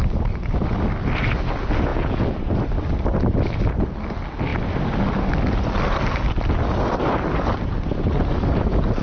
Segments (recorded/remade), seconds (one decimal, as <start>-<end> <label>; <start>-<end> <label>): 0.0-1.9 recorded; 1.9-2.4 remade; 2.4-9.0 recorded